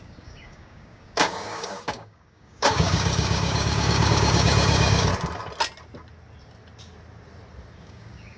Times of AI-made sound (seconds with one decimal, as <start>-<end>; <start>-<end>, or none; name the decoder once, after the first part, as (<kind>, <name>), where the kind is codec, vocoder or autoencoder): 0.0-5.1 (codec, DAC); 7.8-8.4